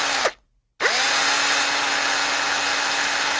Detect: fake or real real